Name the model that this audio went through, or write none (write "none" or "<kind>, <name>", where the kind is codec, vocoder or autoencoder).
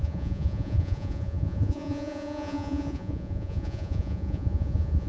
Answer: vocoder, Vocos